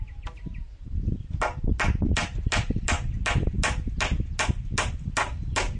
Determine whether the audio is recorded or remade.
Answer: recorded